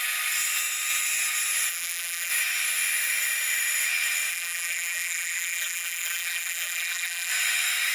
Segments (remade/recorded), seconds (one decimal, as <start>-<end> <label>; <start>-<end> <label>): 0.0-1.7 recorded; 1.7-2.3 remade; 2.3-4.3 recorded; 4.3-7.3 remade; 7.3-7.9 recorded